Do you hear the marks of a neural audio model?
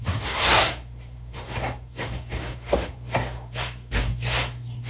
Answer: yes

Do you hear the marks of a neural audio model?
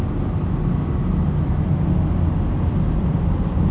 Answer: no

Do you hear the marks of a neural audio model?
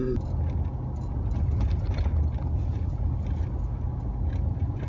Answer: no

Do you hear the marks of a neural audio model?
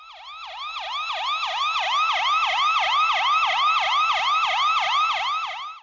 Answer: no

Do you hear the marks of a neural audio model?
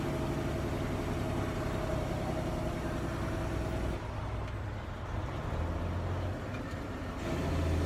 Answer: no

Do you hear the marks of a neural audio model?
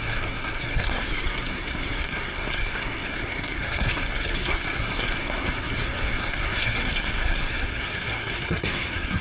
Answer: yes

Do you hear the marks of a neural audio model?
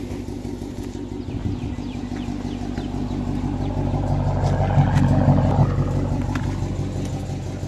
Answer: no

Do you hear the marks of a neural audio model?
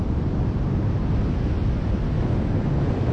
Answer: no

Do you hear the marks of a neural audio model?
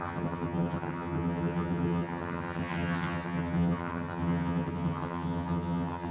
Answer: yes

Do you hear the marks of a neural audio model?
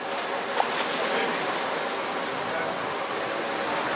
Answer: no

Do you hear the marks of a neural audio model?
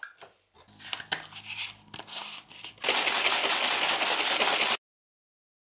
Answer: no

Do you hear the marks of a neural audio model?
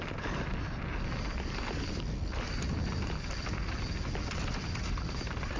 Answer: no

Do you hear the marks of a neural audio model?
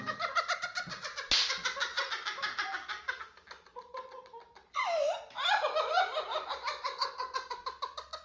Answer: no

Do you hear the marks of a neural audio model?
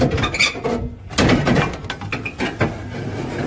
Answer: no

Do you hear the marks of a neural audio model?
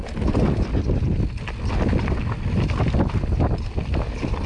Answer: no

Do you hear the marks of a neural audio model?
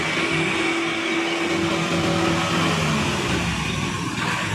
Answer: no